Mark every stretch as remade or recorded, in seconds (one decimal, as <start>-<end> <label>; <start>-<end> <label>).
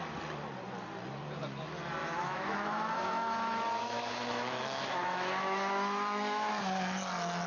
0.0-2.0 recorded; 2.0-6.5 remade; 6.5-7.5 recorded